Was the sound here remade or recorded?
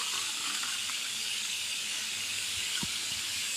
remade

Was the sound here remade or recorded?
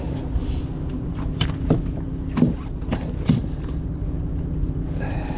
recorded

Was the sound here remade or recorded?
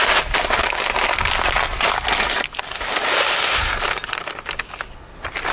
recorded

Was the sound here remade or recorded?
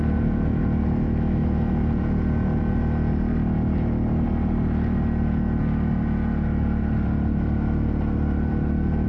recorded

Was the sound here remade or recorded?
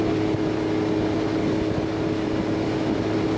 recorded